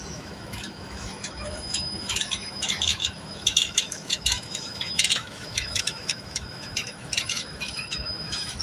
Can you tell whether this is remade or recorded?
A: remade